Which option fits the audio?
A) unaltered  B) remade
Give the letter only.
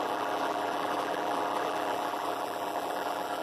B